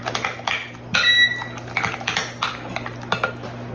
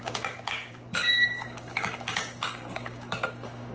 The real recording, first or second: first